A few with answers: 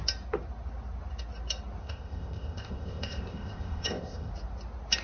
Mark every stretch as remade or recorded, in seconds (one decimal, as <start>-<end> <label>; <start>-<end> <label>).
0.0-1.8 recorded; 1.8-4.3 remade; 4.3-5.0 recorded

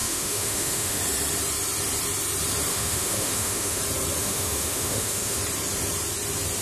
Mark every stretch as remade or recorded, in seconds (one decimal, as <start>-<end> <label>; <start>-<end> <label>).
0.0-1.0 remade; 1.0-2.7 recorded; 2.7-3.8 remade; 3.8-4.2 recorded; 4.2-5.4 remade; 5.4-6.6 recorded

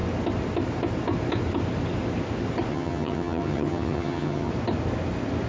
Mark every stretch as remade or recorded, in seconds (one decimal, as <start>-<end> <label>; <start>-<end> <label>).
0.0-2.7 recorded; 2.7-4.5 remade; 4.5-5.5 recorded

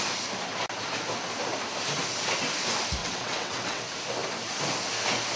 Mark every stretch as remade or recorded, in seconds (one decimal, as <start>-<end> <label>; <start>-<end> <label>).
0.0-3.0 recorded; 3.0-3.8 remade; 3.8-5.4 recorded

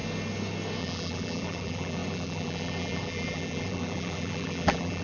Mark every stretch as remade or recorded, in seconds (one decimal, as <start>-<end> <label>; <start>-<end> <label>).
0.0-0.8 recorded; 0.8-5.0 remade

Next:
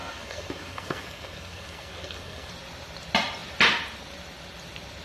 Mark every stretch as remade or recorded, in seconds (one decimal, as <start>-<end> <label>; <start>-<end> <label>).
0.0-2.5 remade; 2.5-5.0 recorded

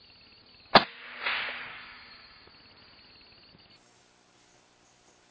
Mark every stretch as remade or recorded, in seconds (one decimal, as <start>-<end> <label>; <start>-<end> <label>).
0.0-1.7 recorded; 1.7-2.5 remade; 2.5-5.3 recorded

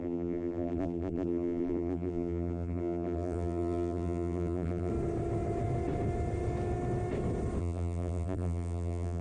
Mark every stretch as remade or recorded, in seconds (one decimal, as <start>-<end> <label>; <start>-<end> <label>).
0.0-4.9 remade; 4.9-7.6 recorded; 7.6-9.2 remade